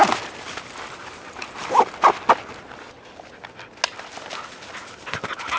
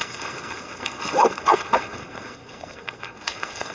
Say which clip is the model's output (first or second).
second